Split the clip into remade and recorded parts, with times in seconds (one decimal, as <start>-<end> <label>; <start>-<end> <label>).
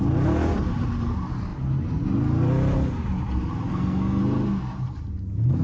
0.0-3.7 recorded; 3.7-4.2 remade; 4.2-5.6 recorded